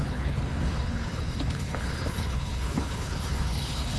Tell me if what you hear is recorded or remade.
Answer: remade